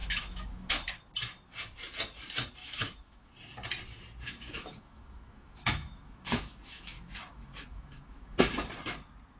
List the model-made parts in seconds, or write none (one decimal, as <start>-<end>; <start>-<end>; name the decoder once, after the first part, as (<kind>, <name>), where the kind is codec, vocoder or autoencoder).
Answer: 0.0-0.9 (autoencoder, DAC-VAE); 2.6-3.3; 4.2-8.4